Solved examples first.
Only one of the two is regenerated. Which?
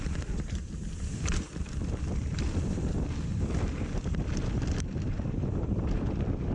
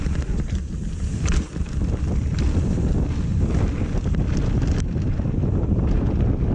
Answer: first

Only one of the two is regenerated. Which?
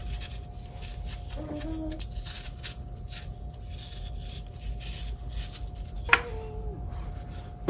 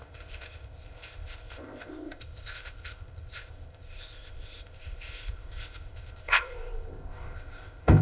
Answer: second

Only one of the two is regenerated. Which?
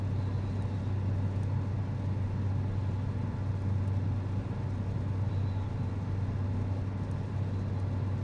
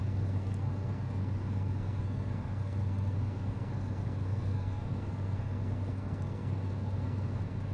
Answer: second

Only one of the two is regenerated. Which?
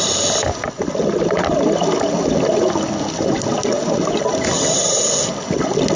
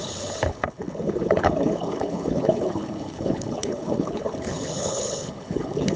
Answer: second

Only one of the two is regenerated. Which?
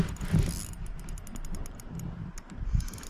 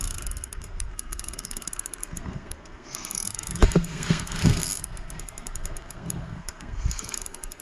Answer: second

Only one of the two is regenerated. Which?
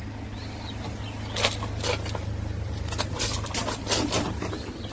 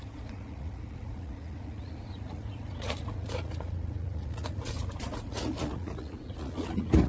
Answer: second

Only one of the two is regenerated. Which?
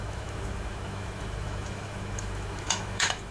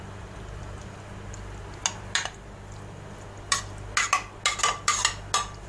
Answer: first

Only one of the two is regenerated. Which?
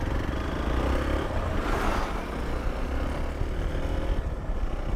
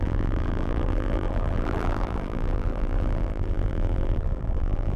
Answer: second